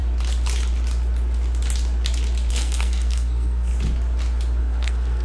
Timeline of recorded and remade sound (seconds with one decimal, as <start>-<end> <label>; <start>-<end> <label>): 0.0-2.5 recorded; 2.5-3.7 remade; 3.7-4.6 recorded; 4.6-5.2 remade